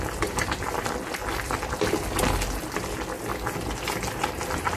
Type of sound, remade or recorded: recorded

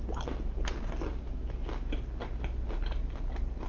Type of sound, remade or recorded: recorded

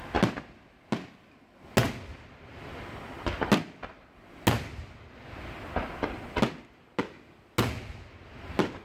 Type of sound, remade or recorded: recorded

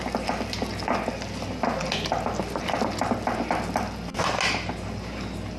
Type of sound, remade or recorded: recorded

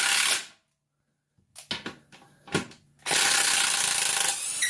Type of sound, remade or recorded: recorded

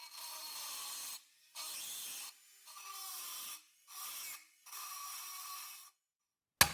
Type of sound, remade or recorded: recorded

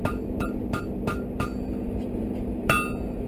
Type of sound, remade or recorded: remade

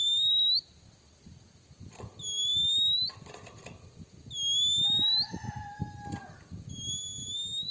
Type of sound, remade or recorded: recorded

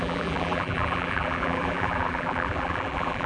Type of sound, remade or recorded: remade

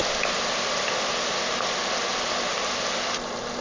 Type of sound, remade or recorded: recorded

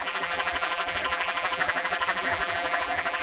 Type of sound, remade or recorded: remade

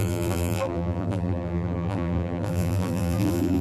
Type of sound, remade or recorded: remade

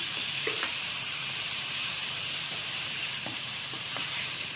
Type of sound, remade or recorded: remade